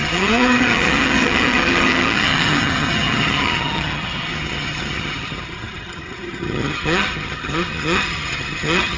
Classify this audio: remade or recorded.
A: remade